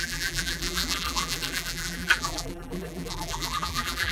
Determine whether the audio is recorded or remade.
remade